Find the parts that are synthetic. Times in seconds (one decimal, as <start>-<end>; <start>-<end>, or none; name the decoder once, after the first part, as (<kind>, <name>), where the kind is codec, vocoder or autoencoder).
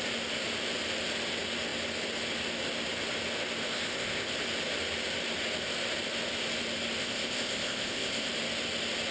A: 3.6-4.3 (codec, ZipCodec); 7.0-8.3